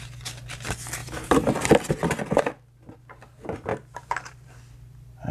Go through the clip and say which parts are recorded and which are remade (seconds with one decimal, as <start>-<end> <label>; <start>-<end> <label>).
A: 0.0-1.0 recorded; 1.0-1.5 remade; 1.5-3.7 recorded; 3.7-4.5 remade; 4.5-5.3 recorded